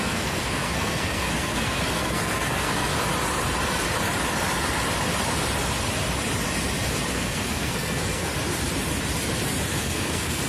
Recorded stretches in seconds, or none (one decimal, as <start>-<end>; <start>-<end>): 2.9-7.1; 8.3-9.8